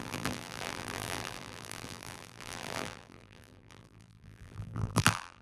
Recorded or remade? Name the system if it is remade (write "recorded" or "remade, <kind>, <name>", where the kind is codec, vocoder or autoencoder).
remade, vocoder, BigVGAN v2